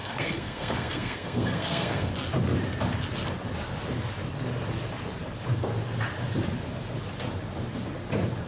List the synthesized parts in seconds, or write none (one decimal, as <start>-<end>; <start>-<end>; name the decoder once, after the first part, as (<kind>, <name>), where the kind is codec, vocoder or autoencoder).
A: 0.0-2.1 (codec, SNAC)